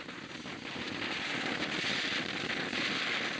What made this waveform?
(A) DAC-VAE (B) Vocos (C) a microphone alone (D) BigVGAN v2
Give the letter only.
D